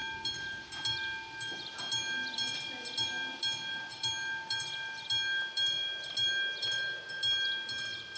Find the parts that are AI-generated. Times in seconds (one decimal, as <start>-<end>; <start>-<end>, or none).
none